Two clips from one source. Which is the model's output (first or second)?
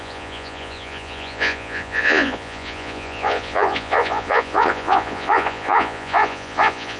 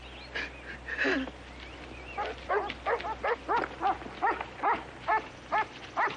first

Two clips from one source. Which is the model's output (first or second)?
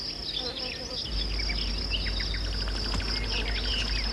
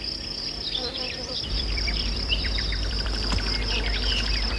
second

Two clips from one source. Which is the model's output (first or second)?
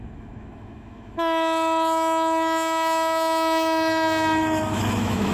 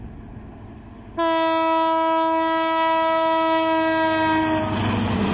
first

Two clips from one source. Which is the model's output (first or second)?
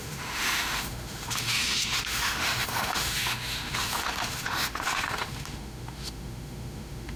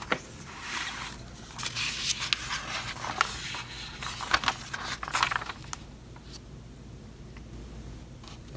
first